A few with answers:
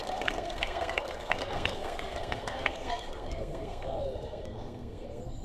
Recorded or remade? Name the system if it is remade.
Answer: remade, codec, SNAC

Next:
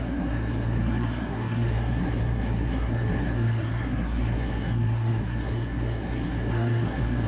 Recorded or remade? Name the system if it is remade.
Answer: remade, codec, SNAC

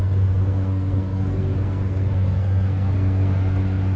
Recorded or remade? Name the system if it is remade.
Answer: remade, codec, SNAC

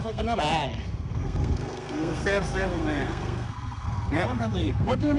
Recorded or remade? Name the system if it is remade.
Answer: remade, codec, SNAC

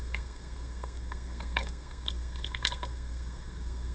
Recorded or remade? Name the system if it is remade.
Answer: remade, codec, SNAC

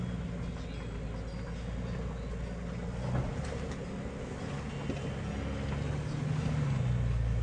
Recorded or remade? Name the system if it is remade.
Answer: recorded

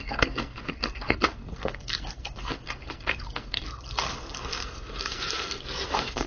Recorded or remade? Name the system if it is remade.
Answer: remade, codec, SNAC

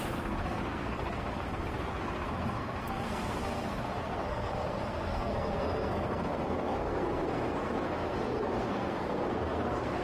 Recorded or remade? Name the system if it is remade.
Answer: remade, codec, SNAC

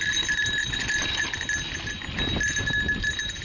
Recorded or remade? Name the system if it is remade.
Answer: recorded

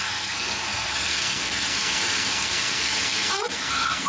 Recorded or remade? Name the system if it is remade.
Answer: remade, codec, SNAC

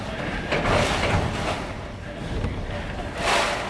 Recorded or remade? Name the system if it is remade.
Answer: recorded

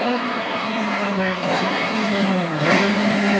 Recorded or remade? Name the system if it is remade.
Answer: remade, codec, SNAC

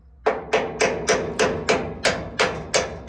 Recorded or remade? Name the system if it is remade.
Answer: recorded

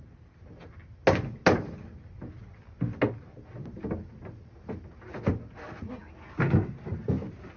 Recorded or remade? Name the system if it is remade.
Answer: recorded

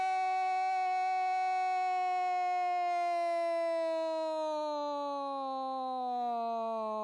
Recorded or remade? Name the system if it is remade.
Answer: recorded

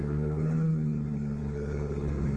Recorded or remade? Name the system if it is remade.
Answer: remade, codec, SNAC